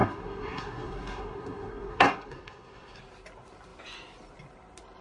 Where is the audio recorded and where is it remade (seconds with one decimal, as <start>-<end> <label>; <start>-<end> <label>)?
0.0-3.0 remade; 3.0-5.0 recorded

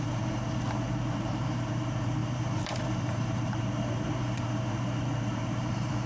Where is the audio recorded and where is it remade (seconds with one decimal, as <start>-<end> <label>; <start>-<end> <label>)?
0.0-6.1 remade

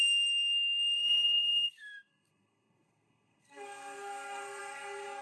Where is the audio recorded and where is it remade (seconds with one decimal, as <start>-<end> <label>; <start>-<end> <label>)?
0.0-5.2 remade

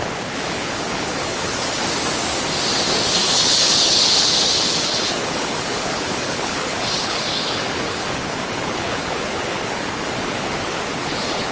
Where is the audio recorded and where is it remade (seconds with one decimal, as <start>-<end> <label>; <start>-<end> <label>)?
0.0-1.8 remade; 1.8-3.2 recorded; 3.2-11.5 remade

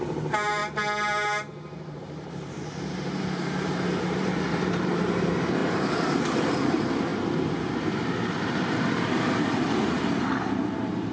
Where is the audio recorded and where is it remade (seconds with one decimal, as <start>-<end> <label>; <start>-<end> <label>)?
0.0-11.1 remade

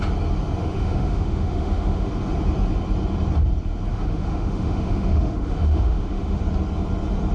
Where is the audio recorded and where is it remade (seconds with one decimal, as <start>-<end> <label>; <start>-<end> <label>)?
0.0-0.6 recorded; 0.6-2.1 remade; 2.1-3.9 recorded; 3.9-6.4 remade; 6.4-7.3 recorded